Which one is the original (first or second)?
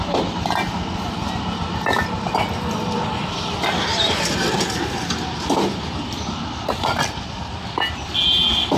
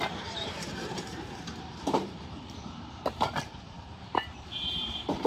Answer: first